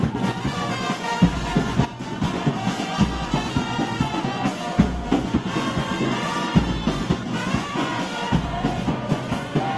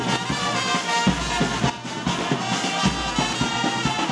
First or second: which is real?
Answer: second